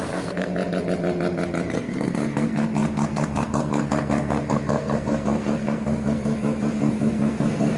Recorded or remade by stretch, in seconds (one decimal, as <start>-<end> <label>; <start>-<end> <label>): 0.0-0.5 remade; 0.5-1.7 recorded; 1.7-7.8 remade